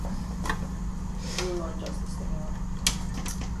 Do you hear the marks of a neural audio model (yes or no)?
no